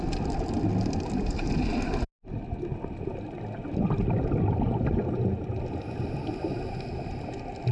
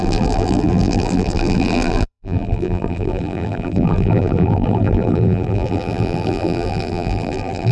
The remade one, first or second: second